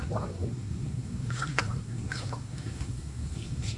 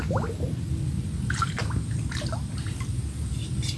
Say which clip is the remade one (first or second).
first